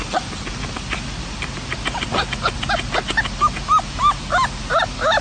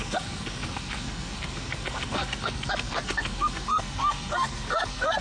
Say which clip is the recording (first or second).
first